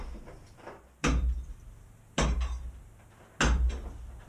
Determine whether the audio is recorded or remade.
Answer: recorded